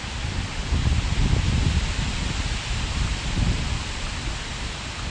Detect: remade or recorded recorded